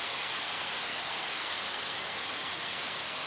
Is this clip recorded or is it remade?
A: remade